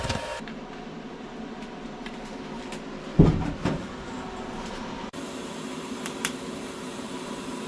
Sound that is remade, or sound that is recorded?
remade